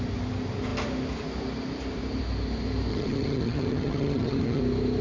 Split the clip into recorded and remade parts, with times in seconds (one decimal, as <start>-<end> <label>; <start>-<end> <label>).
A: 0.0-2.9 recorded; 2.9-4.6 remade; 4.6-5.0 recorded